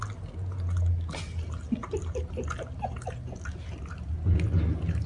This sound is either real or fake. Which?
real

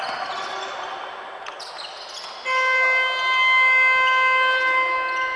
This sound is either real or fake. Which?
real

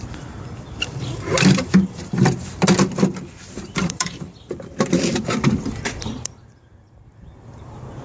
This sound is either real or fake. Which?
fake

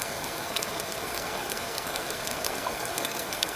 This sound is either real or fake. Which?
fake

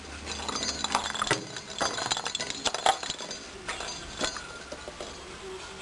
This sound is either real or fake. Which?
real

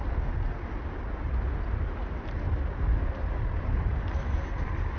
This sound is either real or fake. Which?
real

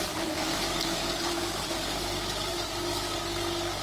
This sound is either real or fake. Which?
fake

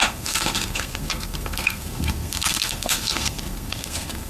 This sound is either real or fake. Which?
fake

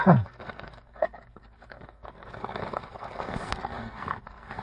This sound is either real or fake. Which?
fake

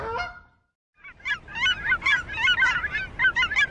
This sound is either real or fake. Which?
real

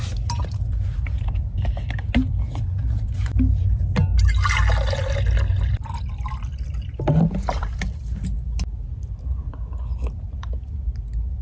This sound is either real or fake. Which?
real